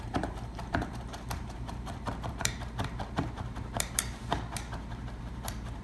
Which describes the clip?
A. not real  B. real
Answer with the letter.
A